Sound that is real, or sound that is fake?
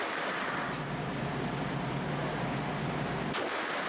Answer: real